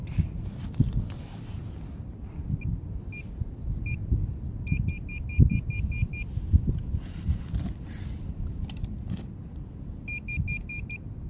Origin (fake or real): real